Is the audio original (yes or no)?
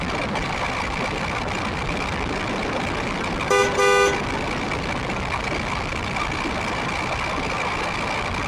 yes